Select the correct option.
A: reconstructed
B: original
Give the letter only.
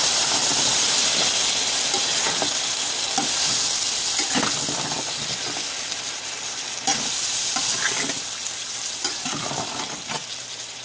B